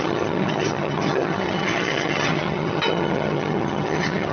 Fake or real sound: fake